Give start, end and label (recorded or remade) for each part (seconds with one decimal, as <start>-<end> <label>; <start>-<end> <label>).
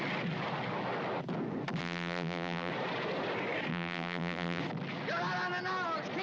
0.0-1.8 recorded; 1.8-2.7 remade; 2.7-3.7 recorded; 3.7-4.6 remade; 4.6-6.2 recorded